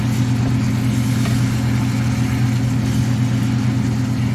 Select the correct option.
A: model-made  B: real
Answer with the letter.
B